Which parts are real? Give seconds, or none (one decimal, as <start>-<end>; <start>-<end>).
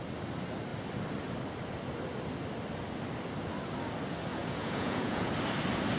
0.0-4.3; 5.3-6.0